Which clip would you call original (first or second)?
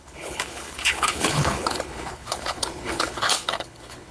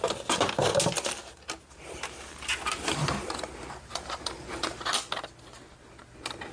second